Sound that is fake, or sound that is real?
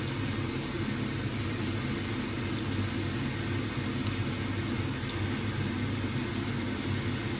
real